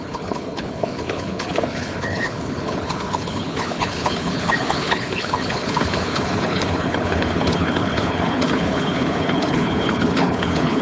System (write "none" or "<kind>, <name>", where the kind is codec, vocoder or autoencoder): codec, HILCodec